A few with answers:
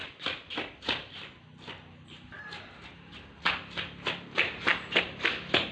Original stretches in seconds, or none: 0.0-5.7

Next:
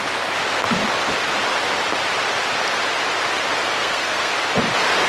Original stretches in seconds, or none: 0.0-3.8; 4.3-5.1

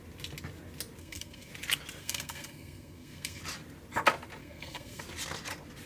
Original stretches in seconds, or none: 0.0-1.0; 1.5-2.0; 3.4-4.4; 5.0-5.9

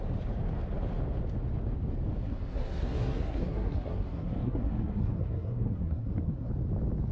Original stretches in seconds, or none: 0.0-2.2; 6.5-7.1

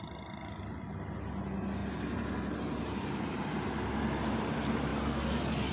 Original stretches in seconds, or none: 0.0-5.7